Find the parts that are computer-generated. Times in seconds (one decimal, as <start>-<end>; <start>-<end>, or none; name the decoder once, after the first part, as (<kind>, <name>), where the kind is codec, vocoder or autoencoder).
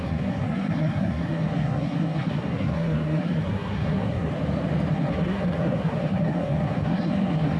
0.0-4.3 (codec, SNAC); 4.9-7.6